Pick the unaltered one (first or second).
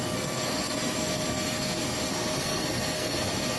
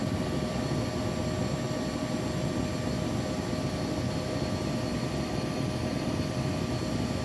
second